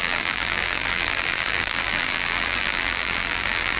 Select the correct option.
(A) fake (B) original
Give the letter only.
A